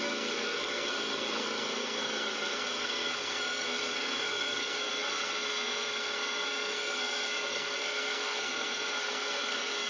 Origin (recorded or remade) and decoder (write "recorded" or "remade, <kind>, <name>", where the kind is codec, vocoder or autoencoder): remade, codec, SNAC